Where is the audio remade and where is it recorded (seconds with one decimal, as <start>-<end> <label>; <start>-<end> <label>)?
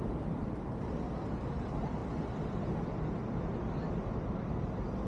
0.0-5.1 recorded